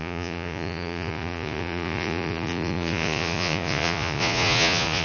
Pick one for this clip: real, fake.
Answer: fake